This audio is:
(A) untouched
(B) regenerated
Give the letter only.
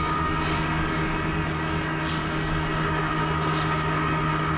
B